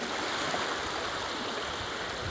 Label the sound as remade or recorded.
recorded